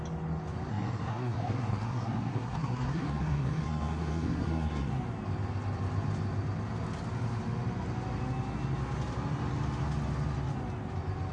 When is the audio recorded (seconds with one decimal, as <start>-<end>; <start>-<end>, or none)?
0.0-0.7; 4.9-11.3